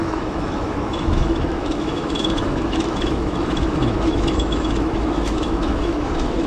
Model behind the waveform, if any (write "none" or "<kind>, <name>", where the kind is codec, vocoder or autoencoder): autoencoder, DAC-VAE